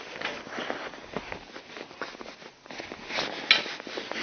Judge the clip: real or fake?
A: real